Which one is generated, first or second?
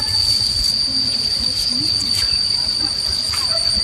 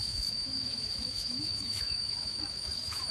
second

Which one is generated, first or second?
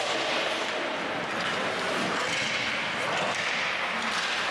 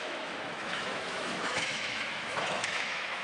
second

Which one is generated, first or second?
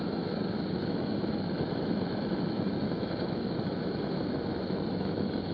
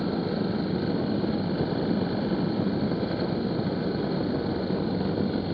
first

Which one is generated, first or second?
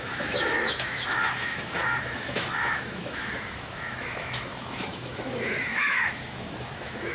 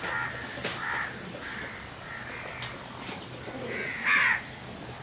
first